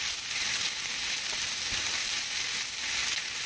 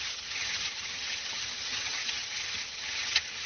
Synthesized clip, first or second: second